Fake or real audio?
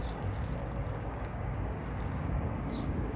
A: fake